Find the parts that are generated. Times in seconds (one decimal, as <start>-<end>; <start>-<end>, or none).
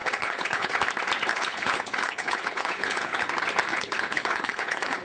0.0-0.7; 1.3-3.3; 3.7-5.0